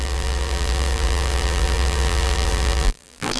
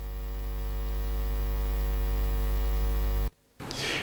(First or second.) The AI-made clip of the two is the first